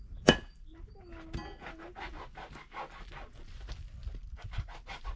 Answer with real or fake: real